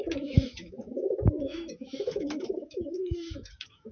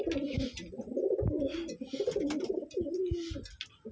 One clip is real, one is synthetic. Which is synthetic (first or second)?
first